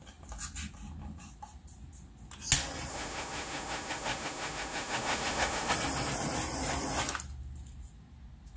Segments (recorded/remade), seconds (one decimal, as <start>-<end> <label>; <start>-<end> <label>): 0.0-2.9 recorded; 2.9-5.7 remade; 5.7-8.6 recorded